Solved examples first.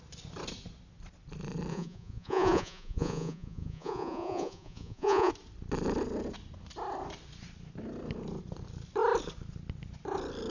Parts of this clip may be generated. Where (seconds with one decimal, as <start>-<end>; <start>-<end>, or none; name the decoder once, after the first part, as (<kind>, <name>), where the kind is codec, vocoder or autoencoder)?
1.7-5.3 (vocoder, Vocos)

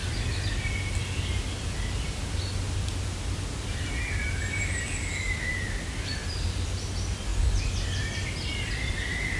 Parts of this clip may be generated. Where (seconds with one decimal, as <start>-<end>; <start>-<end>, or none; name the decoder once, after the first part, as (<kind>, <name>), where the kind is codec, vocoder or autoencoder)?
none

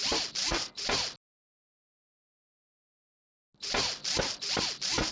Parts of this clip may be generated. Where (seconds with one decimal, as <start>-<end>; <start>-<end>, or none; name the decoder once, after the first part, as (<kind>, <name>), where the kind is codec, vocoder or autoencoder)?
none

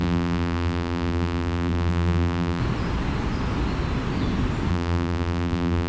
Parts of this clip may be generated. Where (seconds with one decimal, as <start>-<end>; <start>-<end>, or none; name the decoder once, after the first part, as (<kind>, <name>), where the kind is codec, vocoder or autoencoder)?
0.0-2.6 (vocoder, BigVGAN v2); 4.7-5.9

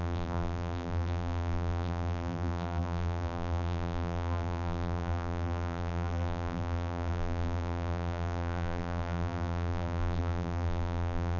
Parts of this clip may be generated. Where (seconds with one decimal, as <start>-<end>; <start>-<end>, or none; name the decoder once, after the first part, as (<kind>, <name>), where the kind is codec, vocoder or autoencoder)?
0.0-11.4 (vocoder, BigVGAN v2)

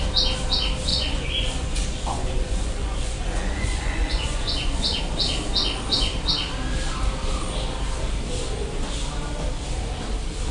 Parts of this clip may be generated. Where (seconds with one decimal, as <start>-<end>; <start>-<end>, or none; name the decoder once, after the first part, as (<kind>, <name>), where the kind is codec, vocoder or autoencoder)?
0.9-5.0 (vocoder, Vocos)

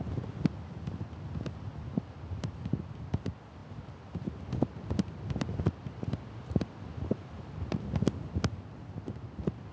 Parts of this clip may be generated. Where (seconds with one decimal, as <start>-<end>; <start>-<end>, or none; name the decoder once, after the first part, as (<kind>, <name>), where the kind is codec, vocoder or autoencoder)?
none